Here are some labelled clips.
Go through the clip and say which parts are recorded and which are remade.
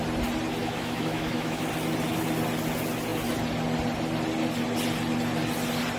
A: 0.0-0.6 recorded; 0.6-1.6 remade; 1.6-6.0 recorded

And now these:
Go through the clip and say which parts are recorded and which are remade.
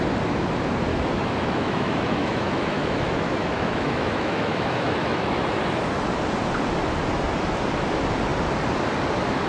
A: 0.0-0.9 recorded; 0.9-5.6 remade; 5.6-9.5 recorded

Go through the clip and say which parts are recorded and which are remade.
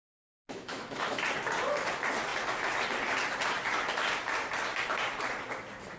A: 0.0-0.4 recorded; 0.4-1.2 remade; 1.2-6.0 recorded